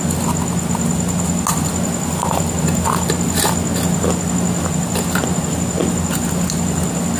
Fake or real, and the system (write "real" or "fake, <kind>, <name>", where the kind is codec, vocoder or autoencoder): real